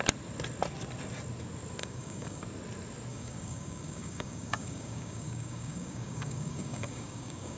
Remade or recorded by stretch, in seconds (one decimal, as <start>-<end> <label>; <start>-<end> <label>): 0.0-1.8 recorded; 1.8-2.4 remade; 2.4-3.1 recorded; 3.1-7.6 remade